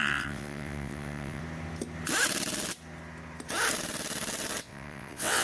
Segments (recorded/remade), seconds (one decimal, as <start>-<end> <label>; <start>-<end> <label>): 0.0-1.4 remade; 1.4-4.6 recorded; 4.6-5.4 remade